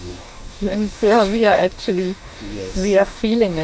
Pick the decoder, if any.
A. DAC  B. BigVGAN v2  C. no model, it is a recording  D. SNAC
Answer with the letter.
A